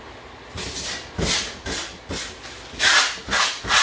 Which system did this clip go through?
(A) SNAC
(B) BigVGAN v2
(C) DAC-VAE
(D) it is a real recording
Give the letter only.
D